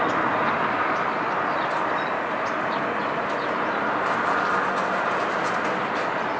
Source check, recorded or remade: recorded